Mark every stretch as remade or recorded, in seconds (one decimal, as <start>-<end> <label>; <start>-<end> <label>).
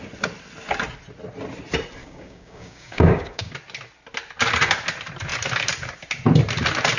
0.0-2.0 recorded; 2.0-3.5 remade; 3.5-7.0 recorded